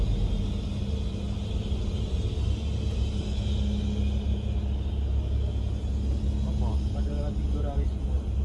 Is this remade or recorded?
recorded